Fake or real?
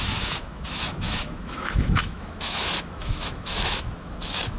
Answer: fake